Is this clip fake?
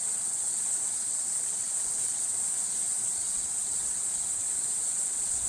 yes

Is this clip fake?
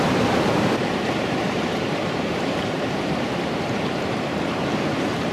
yes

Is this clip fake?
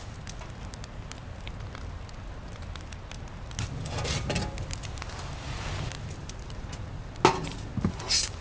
no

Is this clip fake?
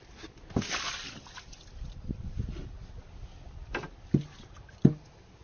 no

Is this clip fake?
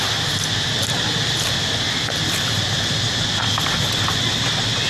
no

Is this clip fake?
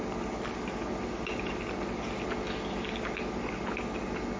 no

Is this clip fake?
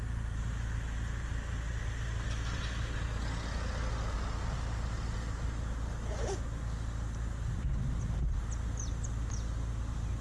no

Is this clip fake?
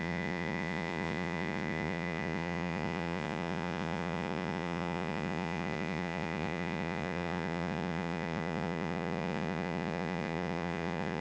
yes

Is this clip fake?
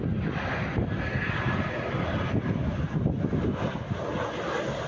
no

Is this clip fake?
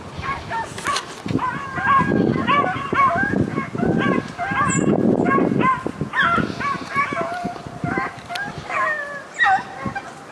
no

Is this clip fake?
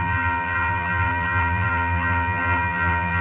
yes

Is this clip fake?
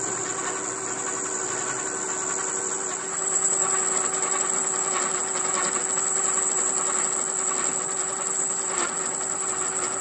no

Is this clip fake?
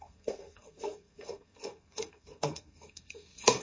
yes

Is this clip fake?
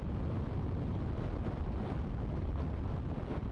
no